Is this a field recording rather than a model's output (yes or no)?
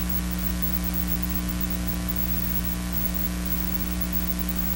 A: yes